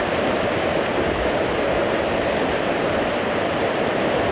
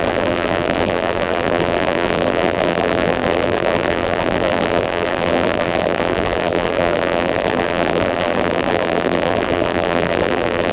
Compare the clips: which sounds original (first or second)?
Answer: first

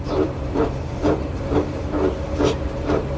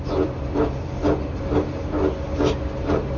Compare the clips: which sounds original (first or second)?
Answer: second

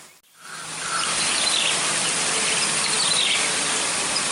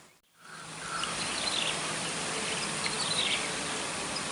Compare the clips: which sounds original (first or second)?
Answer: first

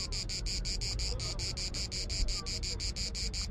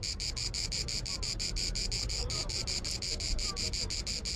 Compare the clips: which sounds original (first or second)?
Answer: first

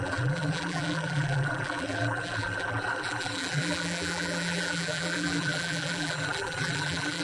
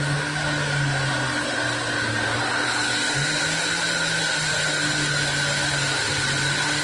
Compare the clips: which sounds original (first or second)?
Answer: second